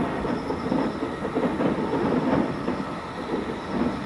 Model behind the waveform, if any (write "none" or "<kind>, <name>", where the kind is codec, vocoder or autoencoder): none